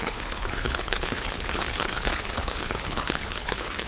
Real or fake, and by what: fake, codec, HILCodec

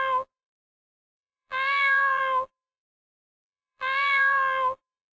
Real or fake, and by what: fake, vocoder, BigVGAN v2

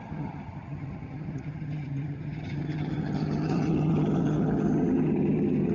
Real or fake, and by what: fake, vocoder, HiFi-GAN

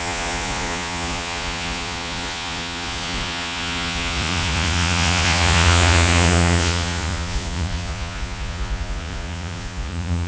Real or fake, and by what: fake, vocoder, Vocos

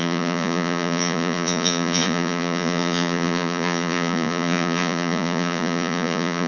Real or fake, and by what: fake, vocoder, Vocos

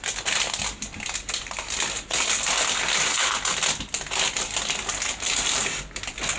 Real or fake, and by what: real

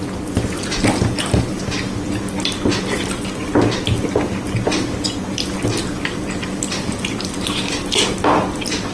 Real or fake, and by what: real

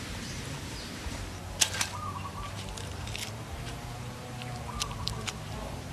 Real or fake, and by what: fake, vocoder, BigVGAN v2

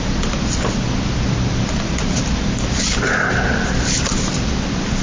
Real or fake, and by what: real